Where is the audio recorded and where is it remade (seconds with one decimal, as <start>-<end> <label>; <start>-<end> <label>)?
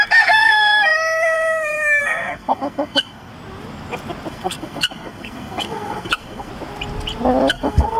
0.0-3.3 remade; 3.3-4.3 recorded; 4.3-6.5 remade; 6.5-7.5 recorded; 7.5-8.0 remade